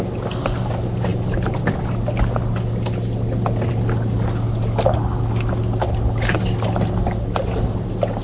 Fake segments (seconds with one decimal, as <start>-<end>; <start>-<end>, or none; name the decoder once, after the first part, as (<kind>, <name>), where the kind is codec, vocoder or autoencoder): none